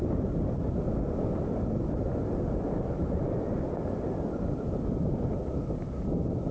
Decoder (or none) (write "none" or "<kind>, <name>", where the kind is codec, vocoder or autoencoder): none